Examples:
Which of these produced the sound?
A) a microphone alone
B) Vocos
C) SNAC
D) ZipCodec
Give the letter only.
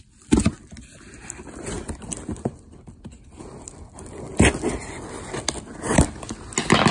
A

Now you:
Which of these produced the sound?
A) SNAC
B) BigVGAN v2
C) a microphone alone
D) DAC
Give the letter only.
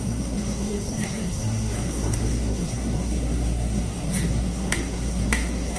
A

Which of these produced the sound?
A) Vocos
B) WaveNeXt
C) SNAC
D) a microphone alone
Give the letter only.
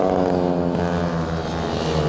D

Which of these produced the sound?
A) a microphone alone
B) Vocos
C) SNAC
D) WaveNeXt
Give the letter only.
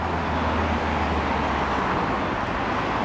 A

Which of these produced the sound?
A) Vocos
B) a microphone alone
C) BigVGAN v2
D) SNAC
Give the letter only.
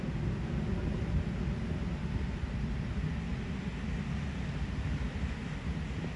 B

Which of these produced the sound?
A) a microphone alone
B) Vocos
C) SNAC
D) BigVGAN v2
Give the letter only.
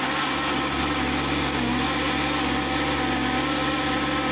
A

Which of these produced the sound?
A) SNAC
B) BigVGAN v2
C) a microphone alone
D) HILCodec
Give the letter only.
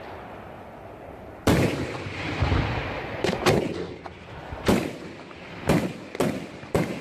C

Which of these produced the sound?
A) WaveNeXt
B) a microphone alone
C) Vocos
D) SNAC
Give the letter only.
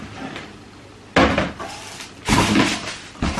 B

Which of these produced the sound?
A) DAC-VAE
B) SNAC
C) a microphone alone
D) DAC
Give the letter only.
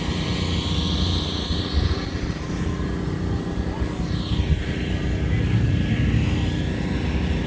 C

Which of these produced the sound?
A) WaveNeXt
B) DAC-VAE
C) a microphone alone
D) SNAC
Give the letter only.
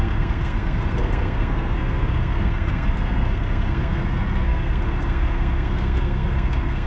D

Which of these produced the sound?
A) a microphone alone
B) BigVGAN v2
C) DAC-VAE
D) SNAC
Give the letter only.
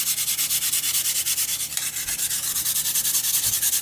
A